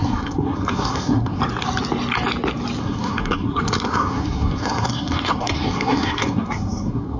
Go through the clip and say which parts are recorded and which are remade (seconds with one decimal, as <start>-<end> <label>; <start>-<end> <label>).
0.0-1.4 remade; 1.4-2.8 recorded; 2.8-7.2 remade

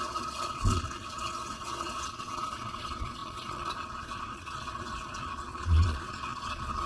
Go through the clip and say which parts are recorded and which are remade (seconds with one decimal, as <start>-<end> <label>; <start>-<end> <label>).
0.0-6.9 remade